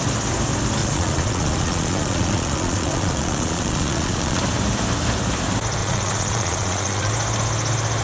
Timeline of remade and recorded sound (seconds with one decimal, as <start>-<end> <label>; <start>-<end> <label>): 0.0-0.8 recorded; 0.8-4.4 remade; 4.4-5.8 recorded; 5.8-7.1 remade; 7.1-8.0 recorded